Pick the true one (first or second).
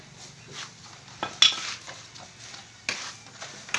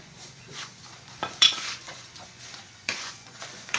first